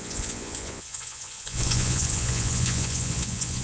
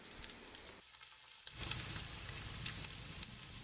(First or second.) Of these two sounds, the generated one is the first